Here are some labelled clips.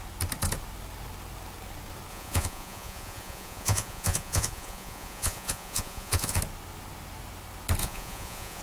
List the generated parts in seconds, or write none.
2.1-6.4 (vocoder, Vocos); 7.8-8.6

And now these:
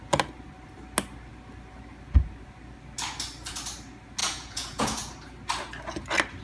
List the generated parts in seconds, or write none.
4.2-5.1 (vocoder, Vocos)

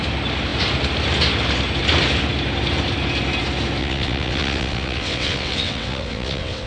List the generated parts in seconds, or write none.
3.8-6.7 (vocoder, WaveNeXt)

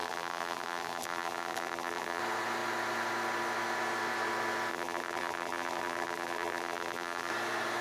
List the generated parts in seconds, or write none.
0.0-2.2 (vocoder, BigVGAN v2); 4.7-7.3